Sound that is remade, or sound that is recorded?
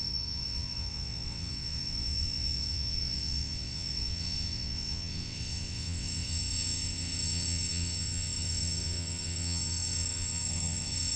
remade